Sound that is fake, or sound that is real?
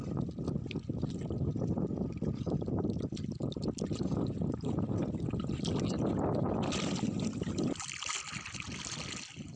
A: real